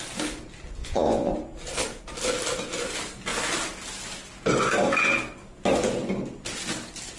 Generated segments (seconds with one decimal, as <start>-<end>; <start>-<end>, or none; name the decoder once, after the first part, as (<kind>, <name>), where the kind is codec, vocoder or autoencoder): 0.8-1.3 (vocoder, Vocos)